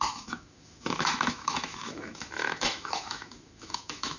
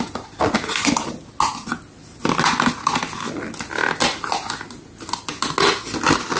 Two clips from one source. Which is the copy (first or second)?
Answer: first